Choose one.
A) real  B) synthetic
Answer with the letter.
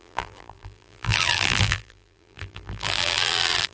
B